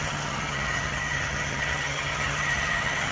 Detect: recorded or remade remade